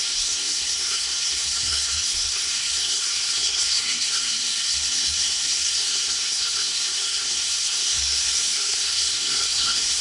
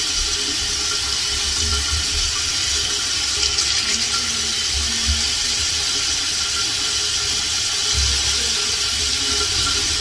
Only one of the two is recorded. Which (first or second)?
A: second